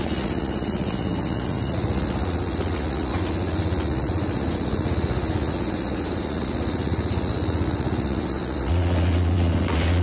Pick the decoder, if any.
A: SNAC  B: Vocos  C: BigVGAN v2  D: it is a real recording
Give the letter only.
B